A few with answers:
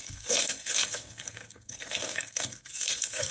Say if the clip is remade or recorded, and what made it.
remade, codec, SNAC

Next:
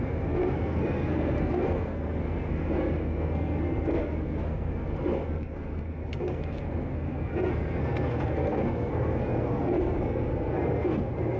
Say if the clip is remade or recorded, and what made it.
remade, codec, SNAC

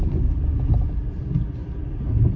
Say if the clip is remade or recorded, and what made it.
recorded